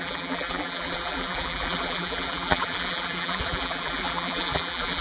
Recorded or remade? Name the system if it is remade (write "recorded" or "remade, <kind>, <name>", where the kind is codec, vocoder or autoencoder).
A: remade, vocoder, BigVGAN v2